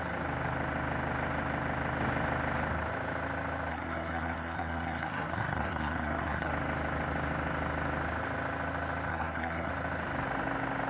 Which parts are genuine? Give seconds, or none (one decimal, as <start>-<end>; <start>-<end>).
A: 0.0-3.7; 6.5-9.1; 9.7-10.9